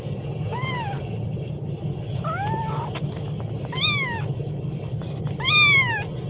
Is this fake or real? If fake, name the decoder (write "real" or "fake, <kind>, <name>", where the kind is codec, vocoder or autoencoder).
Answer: real